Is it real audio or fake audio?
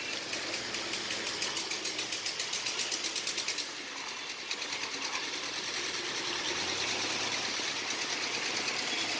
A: real